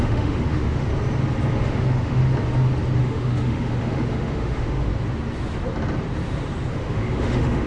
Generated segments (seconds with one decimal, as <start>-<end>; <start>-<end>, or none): 0.0-0.9; 1.6-2.2; 3.0-4.9; 6.7-7.7